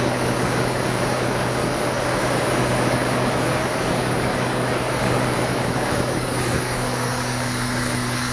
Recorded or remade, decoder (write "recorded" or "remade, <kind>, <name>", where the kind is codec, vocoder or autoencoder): remade, codec, DAC